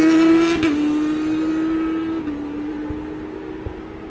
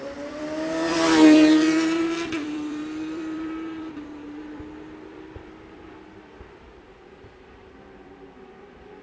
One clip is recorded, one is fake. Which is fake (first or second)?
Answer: second